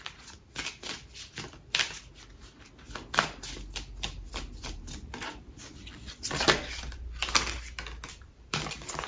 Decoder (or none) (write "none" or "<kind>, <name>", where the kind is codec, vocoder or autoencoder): none